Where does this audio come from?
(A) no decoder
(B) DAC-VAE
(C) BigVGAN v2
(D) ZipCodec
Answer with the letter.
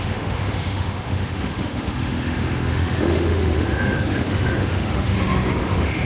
B